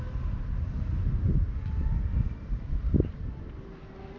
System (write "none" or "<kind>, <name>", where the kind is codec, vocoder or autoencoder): none